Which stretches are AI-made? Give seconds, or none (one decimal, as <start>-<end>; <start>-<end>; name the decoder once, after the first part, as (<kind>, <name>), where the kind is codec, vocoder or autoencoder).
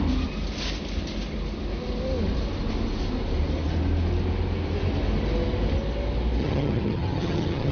6.4-7.7 (vocoder, HiFi-GAN)